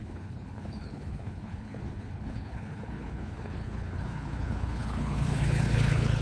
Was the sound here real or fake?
fake